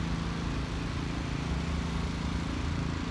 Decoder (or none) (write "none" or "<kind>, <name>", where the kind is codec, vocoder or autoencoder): none